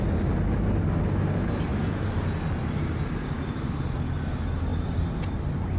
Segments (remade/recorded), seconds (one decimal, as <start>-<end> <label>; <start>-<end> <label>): 0.0-5.8 recorded